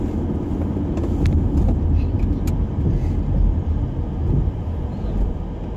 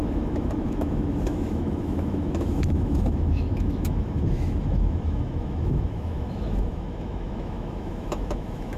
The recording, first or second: first